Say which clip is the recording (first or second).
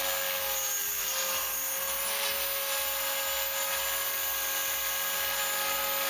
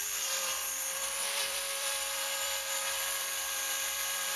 first